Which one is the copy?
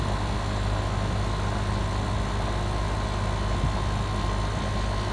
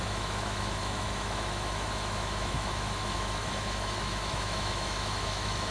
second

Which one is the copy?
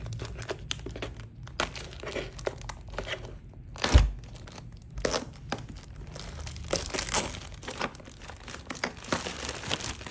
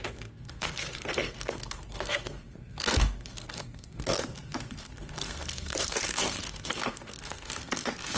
second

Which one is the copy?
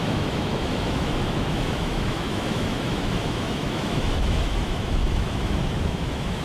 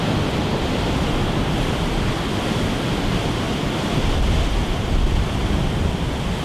first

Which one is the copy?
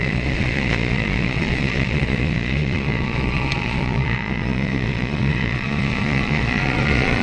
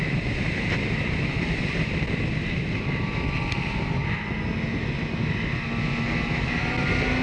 first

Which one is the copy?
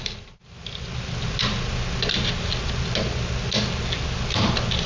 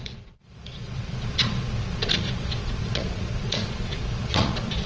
second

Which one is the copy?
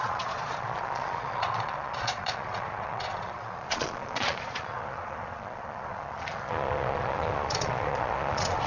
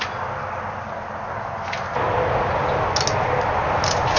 first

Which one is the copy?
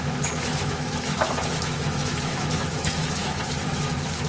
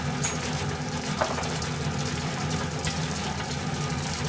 first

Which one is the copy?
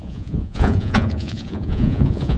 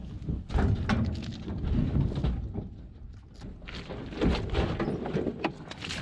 first